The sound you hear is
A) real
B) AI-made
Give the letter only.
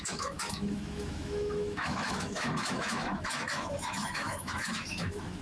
B